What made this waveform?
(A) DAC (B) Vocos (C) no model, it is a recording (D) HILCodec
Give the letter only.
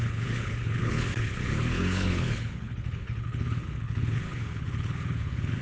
D